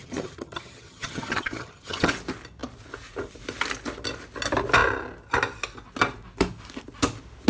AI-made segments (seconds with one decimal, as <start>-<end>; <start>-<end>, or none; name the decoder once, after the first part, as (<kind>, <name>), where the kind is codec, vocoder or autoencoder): 0.0-2.1 (vocoder, HiFi-GAN)